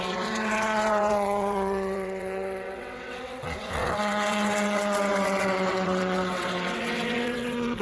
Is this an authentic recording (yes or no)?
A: no